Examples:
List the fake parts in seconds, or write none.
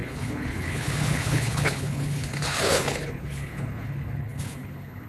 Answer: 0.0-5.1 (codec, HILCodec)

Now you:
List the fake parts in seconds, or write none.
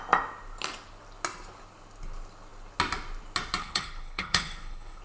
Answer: 3.6-5.0 (codec, HILCodec)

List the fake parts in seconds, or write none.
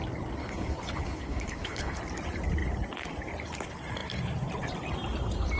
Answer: 0.4-2.0 (codec, HILCodec)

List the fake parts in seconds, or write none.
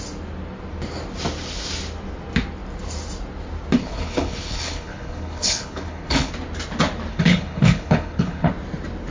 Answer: 3.8-6.3 (codec, HILCodec); 7.1-8.5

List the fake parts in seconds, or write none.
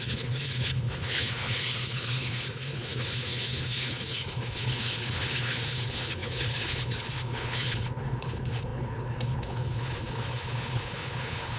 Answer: 0.0-11.6 (codec, HILCodec)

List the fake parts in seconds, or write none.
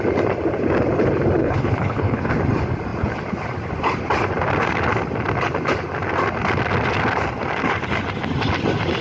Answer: 1.4-2.3 (codec, HILCodec)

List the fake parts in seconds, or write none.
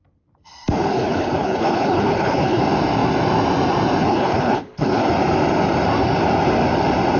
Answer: 0.9-2.6 (codec, HILCodec); 4.0-5.1